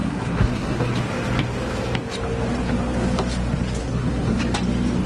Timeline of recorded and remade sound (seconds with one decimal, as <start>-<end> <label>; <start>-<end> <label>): 0.0-0.9 remade; 0.9-3.8 recorded; 3.8-4.4 remade; 4.4-5.1 recorded